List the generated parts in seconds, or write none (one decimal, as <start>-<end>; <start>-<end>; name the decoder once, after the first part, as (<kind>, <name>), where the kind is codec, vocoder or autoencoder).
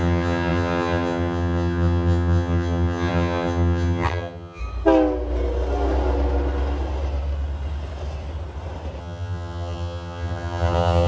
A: 0.0-4.6 (vocoder, HiFi-GAN); 9.0-11.1